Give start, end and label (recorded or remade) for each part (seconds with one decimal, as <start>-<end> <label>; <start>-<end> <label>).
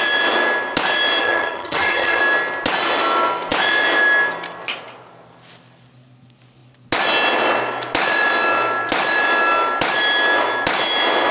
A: 0.0-1.2 recorded; 1.2-2.2 remade; 2.2-11.3 recorded